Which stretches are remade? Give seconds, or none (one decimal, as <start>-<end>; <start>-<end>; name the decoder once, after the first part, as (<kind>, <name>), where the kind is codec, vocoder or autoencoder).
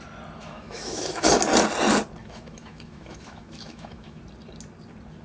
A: 0.4-1.3 (autoencoder, DAC-VAE); 2.2-4.2